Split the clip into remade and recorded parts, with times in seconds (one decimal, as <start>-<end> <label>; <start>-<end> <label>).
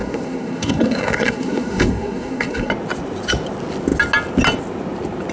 0.0-2.7 remade; 2.7-5.3 recorded